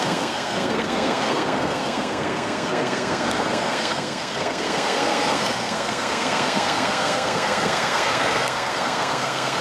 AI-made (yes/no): yes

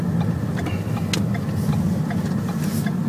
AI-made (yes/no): no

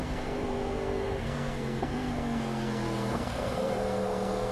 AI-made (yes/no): yes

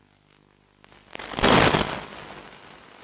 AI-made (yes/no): no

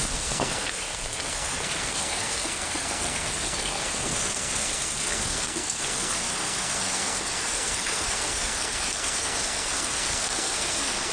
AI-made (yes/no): yes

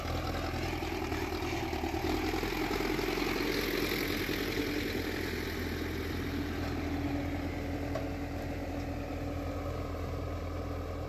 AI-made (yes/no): no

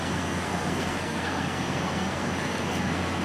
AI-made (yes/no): yes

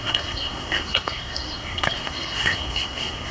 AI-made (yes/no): yes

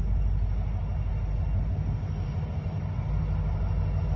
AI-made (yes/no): no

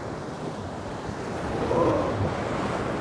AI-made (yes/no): no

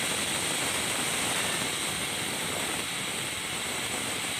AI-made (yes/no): no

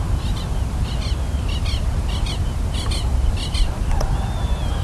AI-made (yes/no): no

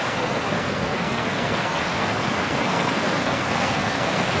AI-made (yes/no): yes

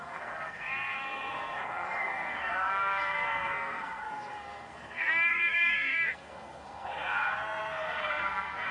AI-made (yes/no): yes